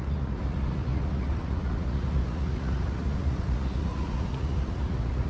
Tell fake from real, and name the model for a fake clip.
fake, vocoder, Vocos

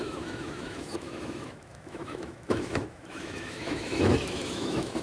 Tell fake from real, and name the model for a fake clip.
fake, autoencoder, DAC-VAE